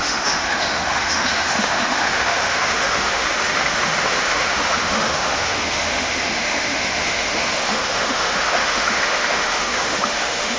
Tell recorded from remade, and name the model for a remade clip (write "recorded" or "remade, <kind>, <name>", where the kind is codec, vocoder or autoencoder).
remade, autoencoder, DAC-VAE